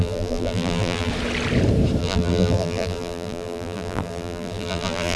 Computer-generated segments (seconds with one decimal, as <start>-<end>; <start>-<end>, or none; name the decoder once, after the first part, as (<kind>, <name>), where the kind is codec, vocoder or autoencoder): 0.0-1.1 (vocoder, BigVGAN v2); 2.0-5.2